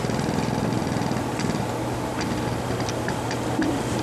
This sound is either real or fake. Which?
real